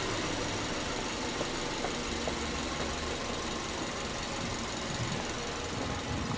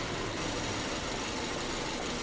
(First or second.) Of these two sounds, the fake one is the second